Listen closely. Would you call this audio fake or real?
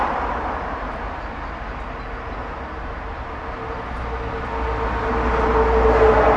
real